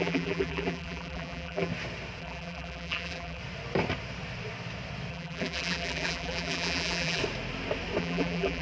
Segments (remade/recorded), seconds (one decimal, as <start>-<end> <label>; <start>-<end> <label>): 0.0-1.7 remade; 1.7-2.2 recorded; 2.2-3.4 remade; 3.4-5.1 recorded; 5.1-7.2 remade; 7.2-8.0 recorded; 8.0-8.6 remade